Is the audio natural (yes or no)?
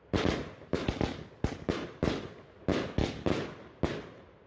yes